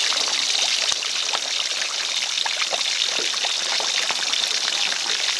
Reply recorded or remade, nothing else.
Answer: recorded